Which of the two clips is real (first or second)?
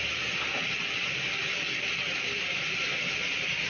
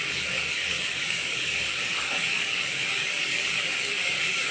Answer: first